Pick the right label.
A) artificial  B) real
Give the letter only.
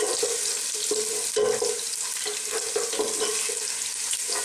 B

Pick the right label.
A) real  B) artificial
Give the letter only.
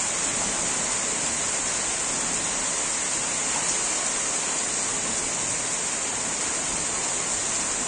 A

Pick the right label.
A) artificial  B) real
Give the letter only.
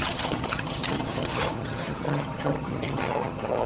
A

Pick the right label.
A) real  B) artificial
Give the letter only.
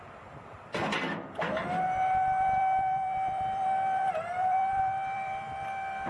B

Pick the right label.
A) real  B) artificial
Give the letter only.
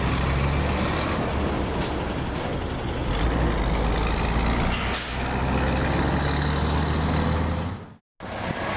A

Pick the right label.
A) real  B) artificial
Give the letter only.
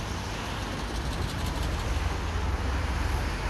A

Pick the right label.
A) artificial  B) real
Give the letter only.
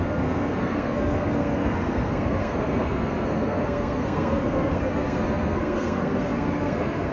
A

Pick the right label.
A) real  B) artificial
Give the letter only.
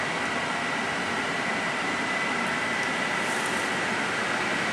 A